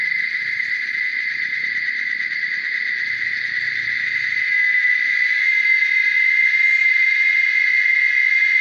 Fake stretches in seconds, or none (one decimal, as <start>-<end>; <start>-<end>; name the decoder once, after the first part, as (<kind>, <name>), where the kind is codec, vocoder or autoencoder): 6.8-7.3 (vocoder, BigVGAN v2)